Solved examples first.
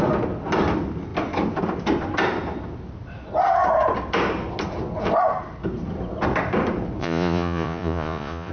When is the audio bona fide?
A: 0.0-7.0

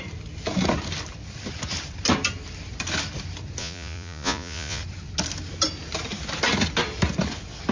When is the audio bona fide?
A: 0.0-3.6; 4.8-7.7